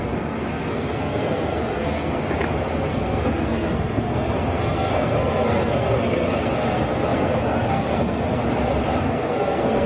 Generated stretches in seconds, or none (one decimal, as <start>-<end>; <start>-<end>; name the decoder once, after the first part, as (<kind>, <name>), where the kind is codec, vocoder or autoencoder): 0.0-2.2 (codec, SNAC); 2.9-8.4; 9.0-9.9